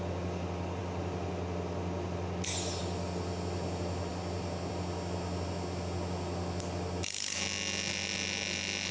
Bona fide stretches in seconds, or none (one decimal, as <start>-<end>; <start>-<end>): 0.0-8.9